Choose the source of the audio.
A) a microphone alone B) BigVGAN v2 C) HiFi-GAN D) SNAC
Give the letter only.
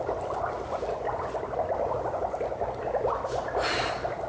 A